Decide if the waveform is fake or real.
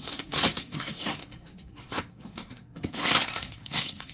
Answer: fake